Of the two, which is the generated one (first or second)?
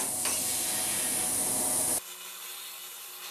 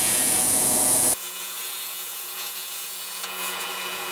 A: second